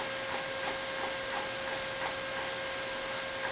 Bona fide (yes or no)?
yes